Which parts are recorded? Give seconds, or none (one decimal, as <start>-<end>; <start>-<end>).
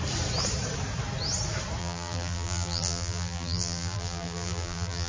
0.0-1.8